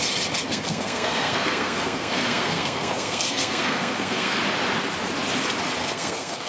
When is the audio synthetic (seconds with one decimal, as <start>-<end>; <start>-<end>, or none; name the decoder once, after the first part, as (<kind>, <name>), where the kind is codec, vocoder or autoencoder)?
0.5-4.4 (codec, SNAC); 5.8-6.5